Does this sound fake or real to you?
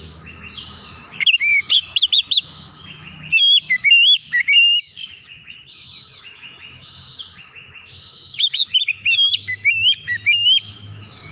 fake